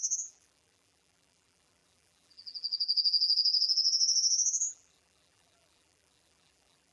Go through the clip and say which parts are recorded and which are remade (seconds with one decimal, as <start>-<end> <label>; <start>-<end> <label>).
0.0-6.9 remade